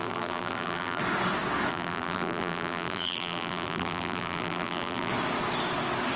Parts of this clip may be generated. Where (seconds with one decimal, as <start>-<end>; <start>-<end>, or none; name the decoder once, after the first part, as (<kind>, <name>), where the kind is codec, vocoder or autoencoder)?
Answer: 0.0-1.0 (vocoder, BigVGAN v2); 1.7-5.1

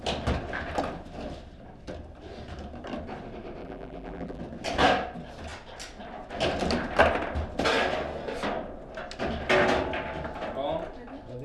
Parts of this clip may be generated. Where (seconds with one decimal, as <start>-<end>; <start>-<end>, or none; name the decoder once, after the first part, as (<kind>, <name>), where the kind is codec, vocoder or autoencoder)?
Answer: 3.6-4.4 (vocoder, BigVGAN v2)

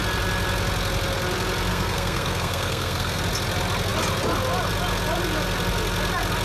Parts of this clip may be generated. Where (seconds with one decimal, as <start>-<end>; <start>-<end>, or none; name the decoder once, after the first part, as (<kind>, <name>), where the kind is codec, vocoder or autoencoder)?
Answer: 1.7-3.2 (codec, SNAC)

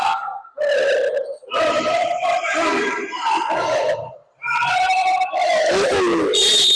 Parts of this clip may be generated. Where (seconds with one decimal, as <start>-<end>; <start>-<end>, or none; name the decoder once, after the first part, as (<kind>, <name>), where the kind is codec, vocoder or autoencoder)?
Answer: 0.0-0.5 (codec, SNAC)

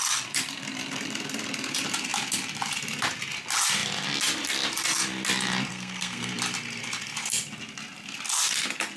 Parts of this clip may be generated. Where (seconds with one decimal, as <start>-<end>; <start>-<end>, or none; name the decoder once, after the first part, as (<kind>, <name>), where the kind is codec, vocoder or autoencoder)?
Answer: 5.7-6.3 (codec, SNAC)

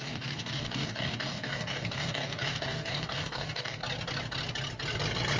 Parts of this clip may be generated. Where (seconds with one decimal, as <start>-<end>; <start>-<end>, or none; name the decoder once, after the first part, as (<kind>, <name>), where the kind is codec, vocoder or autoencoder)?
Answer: 0.0-3.8 (codec, DAC)

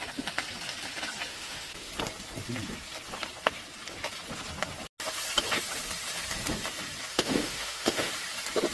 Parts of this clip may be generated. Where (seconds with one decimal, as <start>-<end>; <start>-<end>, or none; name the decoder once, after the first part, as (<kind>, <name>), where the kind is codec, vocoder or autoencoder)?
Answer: 1.3-1.9 (autoencoder, DAC-VAE); 7.1-8.1